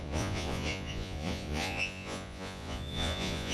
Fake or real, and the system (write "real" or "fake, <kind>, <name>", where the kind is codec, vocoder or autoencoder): fake, vocoder, Vocos